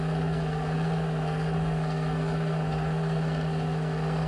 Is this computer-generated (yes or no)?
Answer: yes